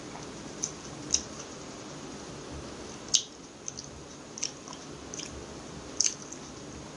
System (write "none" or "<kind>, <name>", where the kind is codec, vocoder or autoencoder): none